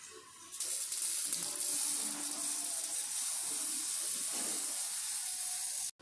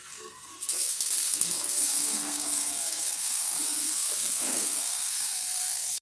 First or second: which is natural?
first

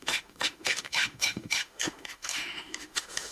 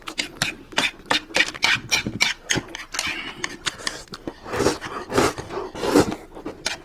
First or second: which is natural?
second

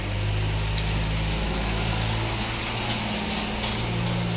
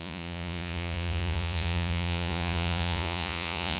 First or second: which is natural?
first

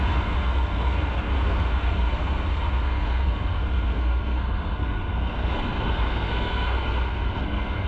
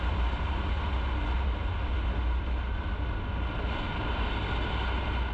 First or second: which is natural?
second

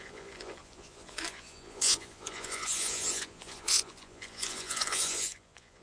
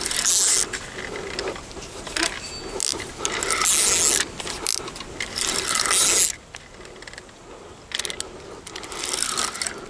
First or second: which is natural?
second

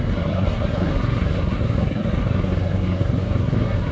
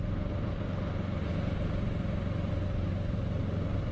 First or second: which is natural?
second